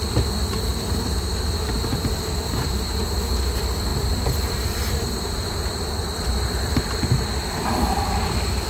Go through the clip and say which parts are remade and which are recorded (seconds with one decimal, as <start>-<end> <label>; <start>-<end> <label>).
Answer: 0.0-0.7 recorded; 0.7-3.0 remade; 3.0-3.9 recorded; 3.9-6.8 remade; 6.8-8.7 recorded